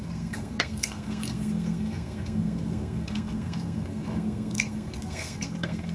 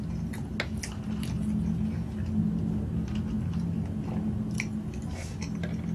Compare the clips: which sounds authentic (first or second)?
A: second